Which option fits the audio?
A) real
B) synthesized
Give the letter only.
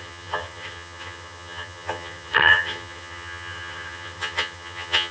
B